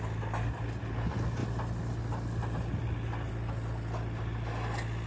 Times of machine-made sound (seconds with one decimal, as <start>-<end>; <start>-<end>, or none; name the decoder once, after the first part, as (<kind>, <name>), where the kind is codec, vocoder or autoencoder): none